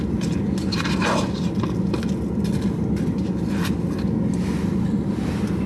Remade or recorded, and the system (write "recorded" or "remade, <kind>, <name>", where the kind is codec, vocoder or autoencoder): recorded